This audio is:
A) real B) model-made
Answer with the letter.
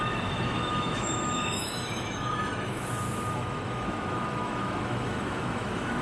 B